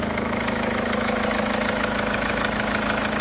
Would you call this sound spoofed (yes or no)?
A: yes